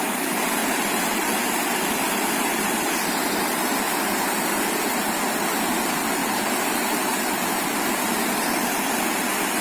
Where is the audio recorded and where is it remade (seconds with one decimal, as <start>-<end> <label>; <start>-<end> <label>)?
0.0-0.6 recorded; 0.6-5.0 remade; 5.0-9.6 recorded